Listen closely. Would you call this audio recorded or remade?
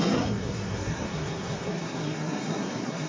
remade